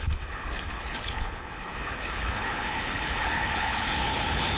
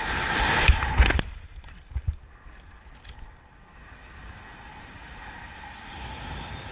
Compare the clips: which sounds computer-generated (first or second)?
first